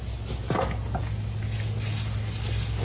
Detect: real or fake real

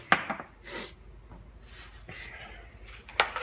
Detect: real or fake real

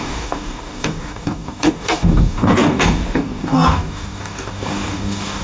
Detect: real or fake fake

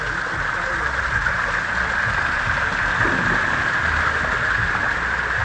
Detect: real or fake real